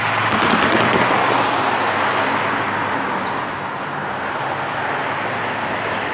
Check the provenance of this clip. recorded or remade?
recorded